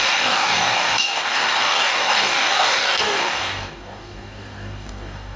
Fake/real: fake